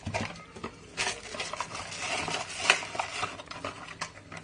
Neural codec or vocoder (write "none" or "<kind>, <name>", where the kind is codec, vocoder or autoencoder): none